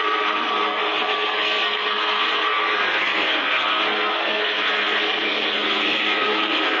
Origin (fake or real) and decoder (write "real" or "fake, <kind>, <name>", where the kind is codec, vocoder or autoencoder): fake, codec, SNAC